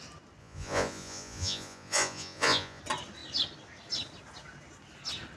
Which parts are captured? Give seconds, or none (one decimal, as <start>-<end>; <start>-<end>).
0.0-0.4; 2.8-5.4